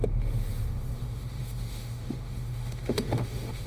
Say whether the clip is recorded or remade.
remade